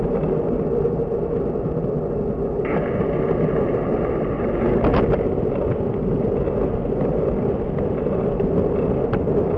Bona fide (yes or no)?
yes